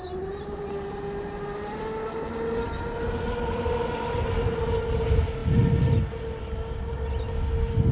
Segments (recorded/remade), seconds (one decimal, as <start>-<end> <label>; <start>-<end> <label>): 0.0-7.9 recorded